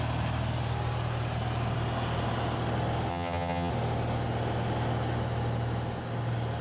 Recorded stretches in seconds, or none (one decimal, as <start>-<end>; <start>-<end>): 0.0-3.1; 3.7-6.6